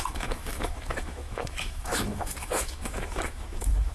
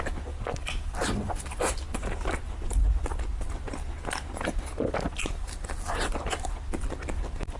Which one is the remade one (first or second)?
first